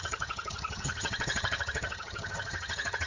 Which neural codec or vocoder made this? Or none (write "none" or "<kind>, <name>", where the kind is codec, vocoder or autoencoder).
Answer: vocoder, HiFi-GAN